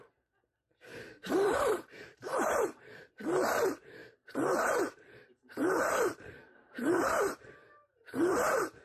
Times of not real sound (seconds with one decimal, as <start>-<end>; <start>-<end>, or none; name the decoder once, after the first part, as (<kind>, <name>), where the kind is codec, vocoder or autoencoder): 0.9-3.1 (vocoder, BigVGAN v2); 4.0-8.8